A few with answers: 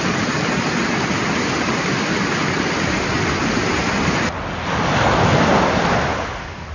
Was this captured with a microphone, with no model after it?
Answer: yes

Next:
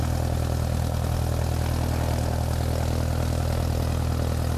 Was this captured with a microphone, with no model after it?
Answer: yes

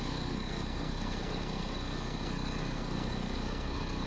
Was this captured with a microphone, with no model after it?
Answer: no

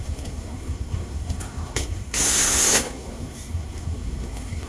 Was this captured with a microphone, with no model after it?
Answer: no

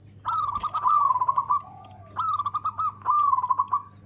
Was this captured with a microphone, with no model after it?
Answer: yes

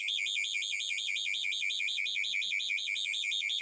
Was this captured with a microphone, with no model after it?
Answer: yes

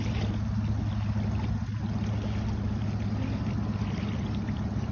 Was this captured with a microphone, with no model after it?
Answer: yes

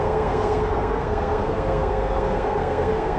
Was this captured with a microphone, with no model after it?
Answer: no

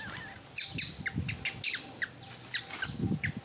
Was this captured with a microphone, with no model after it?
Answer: yes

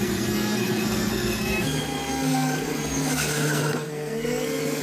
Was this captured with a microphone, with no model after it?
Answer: no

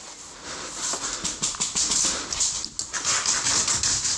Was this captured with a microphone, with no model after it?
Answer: yes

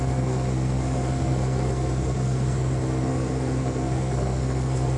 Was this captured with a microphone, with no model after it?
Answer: no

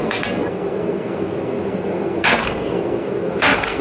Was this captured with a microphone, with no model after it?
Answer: no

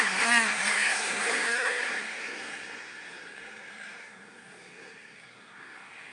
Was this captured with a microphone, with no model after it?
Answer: no